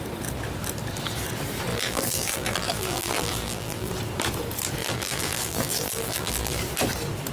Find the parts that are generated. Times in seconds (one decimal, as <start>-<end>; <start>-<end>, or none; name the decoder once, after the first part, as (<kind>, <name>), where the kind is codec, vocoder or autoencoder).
1.7-3.9 (vocoder, BigVGAN v2); 4.8-6.6